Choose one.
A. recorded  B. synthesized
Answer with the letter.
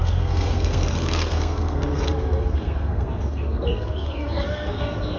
B